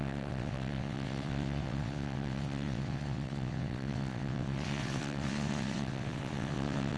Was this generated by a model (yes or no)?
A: yes